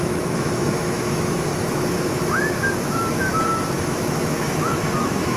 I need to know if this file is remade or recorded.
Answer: remade